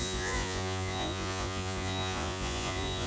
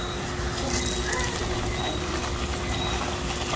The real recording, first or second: second